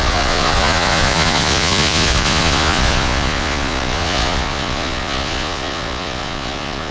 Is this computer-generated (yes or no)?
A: yes